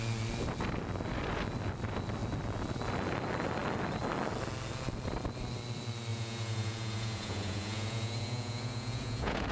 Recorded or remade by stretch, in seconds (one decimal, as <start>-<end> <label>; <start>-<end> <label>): 0.0-6.1 recorded; 6.1-9.5 remade

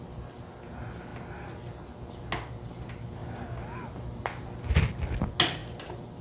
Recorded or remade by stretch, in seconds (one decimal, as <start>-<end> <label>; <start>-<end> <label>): 0.0-6.2 recorded

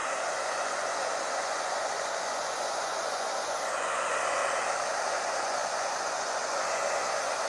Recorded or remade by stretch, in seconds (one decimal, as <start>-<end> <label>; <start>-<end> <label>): 0.0-4.4 remade; 4.4-5.0 recorded; 5.0-7.5 remade

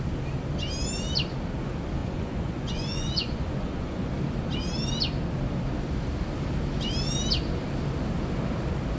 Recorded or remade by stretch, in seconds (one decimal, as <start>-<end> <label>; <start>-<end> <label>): 0.0-2.0 recorded; 2.0-4.1 remade; 4.1-9.0 recorded

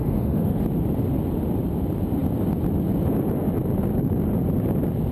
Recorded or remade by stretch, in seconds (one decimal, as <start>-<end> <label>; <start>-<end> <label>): 0.0-0.6 remade; 0.6-5.1 recorded